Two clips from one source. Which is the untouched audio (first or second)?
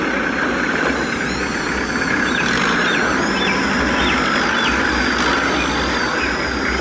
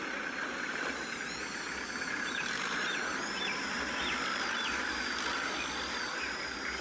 first